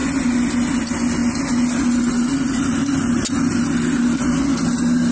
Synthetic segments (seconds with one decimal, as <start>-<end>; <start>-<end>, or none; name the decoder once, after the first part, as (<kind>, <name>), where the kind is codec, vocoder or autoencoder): none